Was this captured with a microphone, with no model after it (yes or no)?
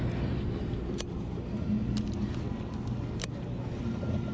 yes